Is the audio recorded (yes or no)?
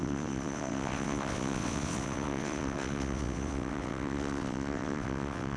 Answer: no